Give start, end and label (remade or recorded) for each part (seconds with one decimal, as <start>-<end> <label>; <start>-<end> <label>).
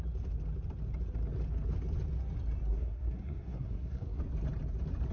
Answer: 0.0-2.7 recorded; 2.7-4.2 remade; 4.2-5.1 recorded